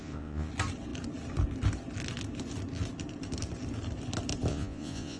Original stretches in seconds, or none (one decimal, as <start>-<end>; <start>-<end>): 0.5-4.5